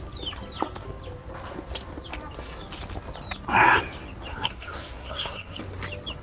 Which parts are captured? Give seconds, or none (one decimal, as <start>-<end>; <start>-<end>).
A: 0.0-4.3; 5.6-6.2